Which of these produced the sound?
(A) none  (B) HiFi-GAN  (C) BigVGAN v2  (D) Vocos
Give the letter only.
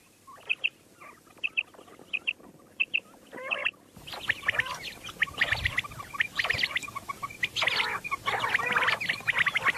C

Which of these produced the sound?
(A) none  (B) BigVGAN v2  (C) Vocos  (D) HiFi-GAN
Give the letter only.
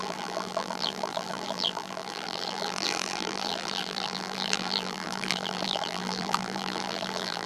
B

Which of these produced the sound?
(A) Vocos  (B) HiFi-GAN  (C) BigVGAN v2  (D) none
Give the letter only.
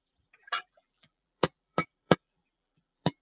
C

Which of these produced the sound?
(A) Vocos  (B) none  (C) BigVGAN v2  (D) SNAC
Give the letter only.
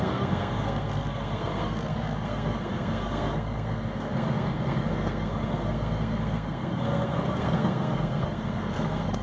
D